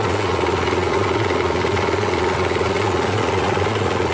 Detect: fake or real fake